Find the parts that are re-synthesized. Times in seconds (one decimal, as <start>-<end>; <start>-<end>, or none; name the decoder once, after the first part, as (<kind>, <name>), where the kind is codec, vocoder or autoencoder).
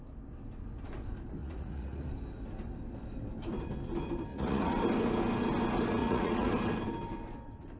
1.4-2.1 (vocoder, Vocos); 4.3-4.8; 6.0-6.5